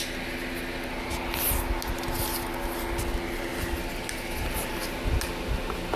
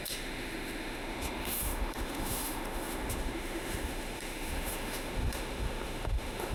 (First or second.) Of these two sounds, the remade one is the second